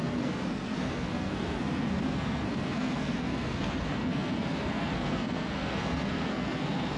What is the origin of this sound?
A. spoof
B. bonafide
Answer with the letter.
A